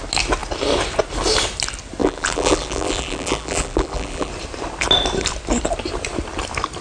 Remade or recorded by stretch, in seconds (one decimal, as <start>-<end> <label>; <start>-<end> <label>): 0.0-2.0 recorded; 2.0-4.3 remade; 4.3-6.8 recorded